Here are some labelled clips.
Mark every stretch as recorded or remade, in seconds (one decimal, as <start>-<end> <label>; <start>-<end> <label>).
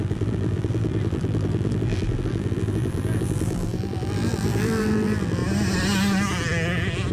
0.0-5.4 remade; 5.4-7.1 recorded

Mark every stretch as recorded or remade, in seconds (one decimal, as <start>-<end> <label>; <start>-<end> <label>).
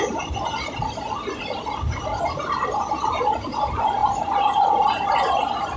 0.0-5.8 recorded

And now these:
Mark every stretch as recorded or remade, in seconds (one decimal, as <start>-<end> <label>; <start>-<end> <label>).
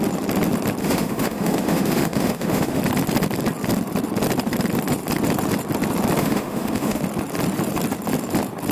0.0-0.8 recorded; 0.8-2.8 remade; 2.8-6.2 recorded; 6.2-7.0 remade; 7.0-8.7 recorded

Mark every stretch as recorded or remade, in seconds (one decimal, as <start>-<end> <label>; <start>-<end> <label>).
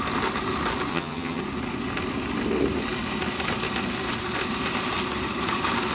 0.0-0.9 recorded; 0.9-1.4 remade; 1.4-5.9 recorded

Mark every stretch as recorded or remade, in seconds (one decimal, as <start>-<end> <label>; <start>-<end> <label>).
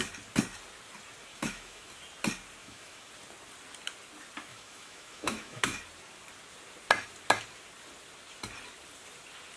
0.0-1.3 recorded; 1.3-1.9 remade; 1.9-2.6 recorded; 2.6-3.1 remade; 3.1-4.5 recorded; 4.5-5.8 remade; 5.8-9.6 recorded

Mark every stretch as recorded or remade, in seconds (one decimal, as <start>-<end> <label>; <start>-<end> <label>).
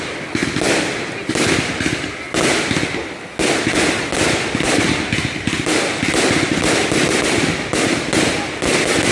0.0-9.1 recorded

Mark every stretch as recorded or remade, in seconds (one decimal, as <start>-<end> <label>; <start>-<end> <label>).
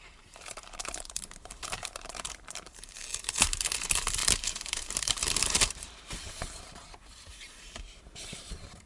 0.0-8.9 remade